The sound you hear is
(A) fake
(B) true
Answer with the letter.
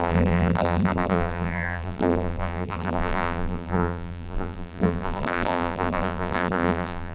A